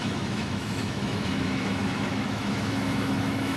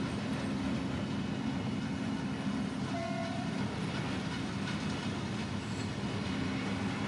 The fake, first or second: first